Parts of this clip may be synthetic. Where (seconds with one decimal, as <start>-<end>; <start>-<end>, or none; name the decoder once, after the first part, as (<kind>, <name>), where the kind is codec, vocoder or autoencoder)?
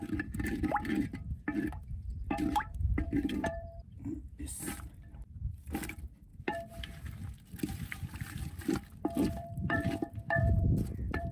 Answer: 0.0-6.3 (vocoder, BigVGAN v2); 9.2-11.3